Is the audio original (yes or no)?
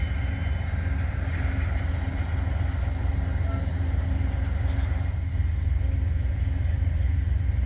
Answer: yes